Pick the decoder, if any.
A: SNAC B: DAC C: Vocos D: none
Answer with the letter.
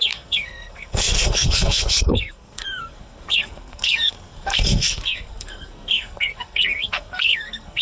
A